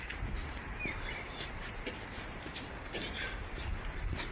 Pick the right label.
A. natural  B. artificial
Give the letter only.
B